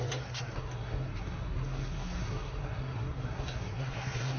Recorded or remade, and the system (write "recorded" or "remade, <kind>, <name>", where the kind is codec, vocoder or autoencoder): remade, codec, SNAC